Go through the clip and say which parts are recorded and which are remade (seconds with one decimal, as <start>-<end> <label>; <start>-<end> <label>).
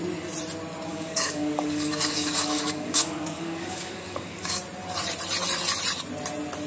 0.0-0.9 recorded; 0.9-4.6 remade; 4.6-6.7 recorded